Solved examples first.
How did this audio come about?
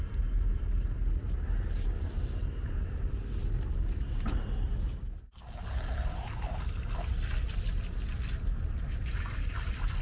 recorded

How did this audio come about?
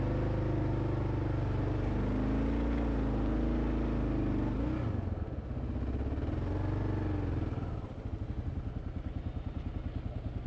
recorded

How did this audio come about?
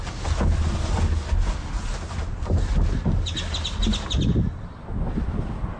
recorded